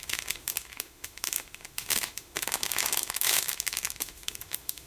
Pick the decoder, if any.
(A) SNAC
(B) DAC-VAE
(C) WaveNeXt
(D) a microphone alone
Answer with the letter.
B